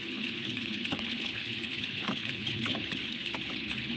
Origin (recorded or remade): remade